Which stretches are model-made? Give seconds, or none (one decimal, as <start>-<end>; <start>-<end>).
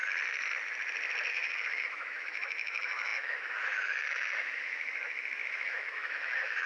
1.3-6.7